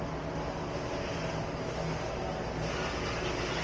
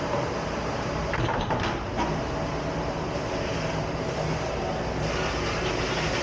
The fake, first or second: second